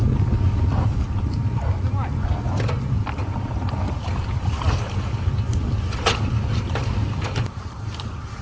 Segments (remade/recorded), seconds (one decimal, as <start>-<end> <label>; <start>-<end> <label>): 0.0-7.0 recorded; 7.0-8.0 remade; 8.0-8.4 recorded